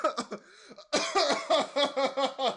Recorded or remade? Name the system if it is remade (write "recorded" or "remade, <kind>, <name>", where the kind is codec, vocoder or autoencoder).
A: recorded